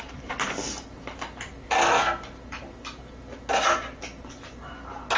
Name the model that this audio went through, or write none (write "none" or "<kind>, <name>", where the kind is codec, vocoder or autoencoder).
none